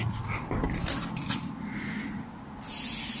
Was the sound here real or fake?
real